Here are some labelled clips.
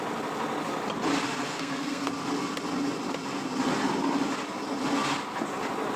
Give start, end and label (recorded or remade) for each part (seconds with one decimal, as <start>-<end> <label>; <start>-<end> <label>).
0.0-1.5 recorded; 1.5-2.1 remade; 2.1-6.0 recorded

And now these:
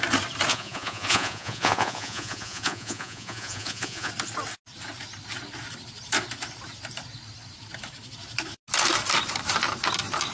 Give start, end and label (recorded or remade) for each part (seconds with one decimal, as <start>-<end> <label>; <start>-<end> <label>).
0.0-0.5 recorded; 0.5-4.1 remade; 4.1-10.3 recorded

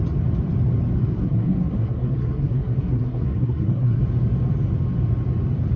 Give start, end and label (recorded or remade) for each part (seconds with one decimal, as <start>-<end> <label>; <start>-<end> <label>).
0.0-1.2 recorded; 1.2-4.0 remade; 4.0-5.8 recorded

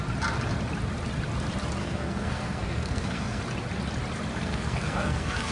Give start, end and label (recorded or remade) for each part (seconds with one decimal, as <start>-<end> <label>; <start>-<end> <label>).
0.0-1.8 recorded; 1.8-3.4 remade; 3.4-4.3 recorded; 4.3-5.5 remade

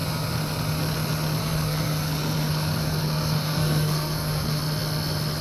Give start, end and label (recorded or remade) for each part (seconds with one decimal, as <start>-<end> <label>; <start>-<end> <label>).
0.0-1.4 recorded; 1.4-4.6 remade; 4.6-5.4 recorded

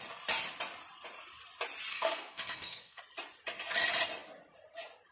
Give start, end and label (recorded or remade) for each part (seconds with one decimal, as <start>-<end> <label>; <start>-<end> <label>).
0.0-1.9 recorded; 1.9-3.0 remade; 3.0-5.1 recorded

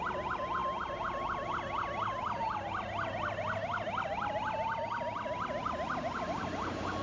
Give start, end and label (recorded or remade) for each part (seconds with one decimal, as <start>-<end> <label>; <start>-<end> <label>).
0.0-7.0 recorded